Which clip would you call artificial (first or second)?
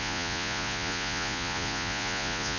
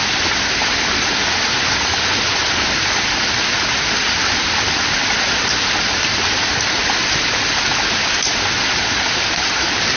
first